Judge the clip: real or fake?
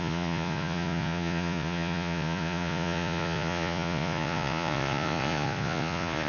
fake